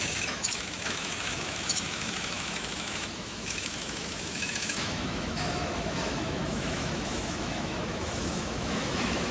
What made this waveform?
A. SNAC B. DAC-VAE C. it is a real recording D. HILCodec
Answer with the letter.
B